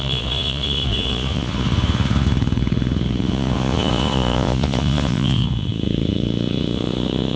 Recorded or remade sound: remade